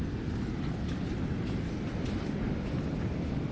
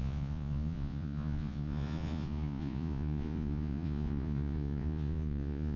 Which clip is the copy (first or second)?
second